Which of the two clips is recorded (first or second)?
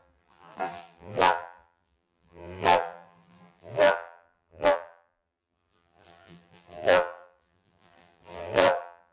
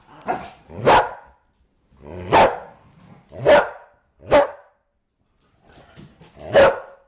second